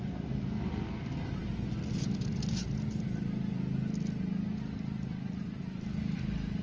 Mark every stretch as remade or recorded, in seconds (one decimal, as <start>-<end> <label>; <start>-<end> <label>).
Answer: 0.0-6.6 recorded